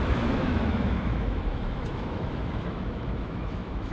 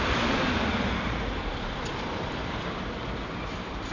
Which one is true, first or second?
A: second